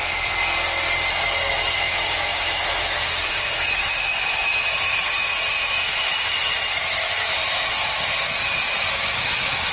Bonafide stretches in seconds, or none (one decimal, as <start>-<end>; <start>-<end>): 0.0-1.1

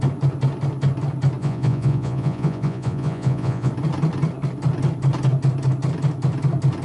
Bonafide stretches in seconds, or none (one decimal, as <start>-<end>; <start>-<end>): 0.0-1.4; 3.7-6.8